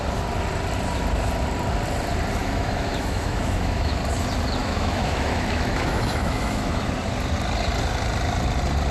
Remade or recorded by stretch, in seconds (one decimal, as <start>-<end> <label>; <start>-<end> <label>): 0.0-2.4 recorded; 2.4-4.0 remade; 4.0-4.6 recorded; 4.6-6.9 remade; 6.9-8.9 recorded